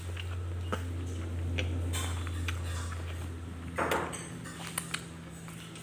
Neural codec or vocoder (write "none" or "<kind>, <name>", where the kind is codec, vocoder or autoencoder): none